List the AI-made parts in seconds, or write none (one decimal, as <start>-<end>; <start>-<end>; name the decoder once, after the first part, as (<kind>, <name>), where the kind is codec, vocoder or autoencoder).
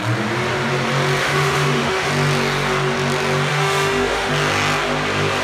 1.2-2.1 (autoencoder, DAC-VAE); 3.5-4.3